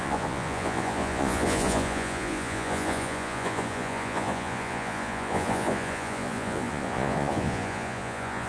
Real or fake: fake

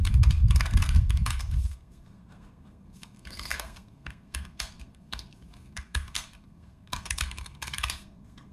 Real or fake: fake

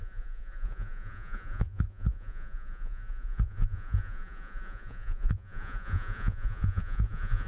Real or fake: fake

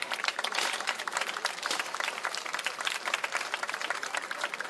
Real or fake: fake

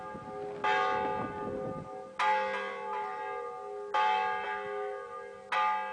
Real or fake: real